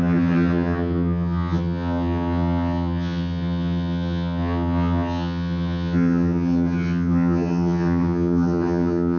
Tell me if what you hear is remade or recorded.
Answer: remade